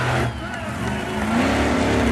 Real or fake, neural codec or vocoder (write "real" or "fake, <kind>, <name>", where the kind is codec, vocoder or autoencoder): real